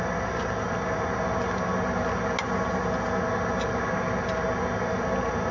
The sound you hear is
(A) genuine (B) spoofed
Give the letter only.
A